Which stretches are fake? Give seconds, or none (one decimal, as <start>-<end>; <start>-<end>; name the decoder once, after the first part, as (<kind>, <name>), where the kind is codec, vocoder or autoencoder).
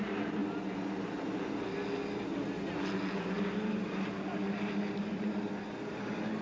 0.0-0.4 (vocoder, BigVGAN v2); 3.2-6.4